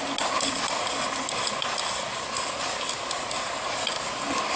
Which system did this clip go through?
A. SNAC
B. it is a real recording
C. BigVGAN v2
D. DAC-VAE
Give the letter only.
B